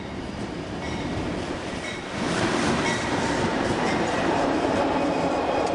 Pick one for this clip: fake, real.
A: fake